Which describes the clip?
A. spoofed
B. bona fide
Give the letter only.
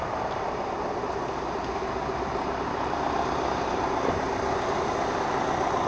B